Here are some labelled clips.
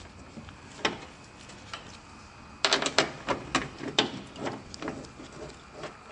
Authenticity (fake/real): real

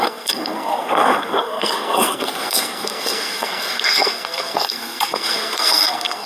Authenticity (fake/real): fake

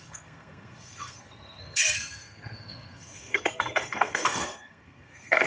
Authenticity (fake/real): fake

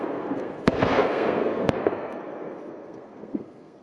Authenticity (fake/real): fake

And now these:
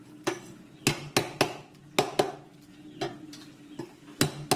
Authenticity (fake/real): real